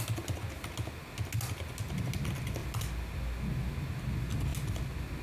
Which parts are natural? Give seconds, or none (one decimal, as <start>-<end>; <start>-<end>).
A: 0.0-5.2